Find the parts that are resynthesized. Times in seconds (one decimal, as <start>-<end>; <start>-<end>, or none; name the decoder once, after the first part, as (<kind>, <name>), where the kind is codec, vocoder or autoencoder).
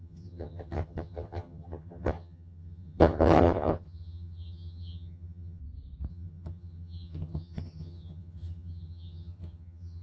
0.0-5.6 (vocoder, HiFi-GAN); 6.1-10.0